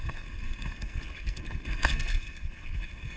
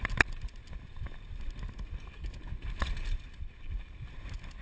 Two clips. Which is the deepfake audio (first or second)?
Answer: first